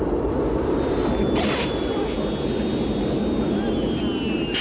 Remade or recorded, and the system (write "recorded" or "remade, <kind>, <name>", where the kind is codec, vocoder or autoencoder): recorded